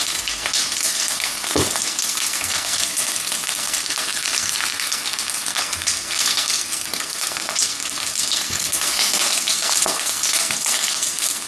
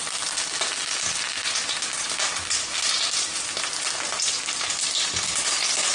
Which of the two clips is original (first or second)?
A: second